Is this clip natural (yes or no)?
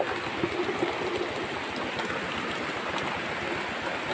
yes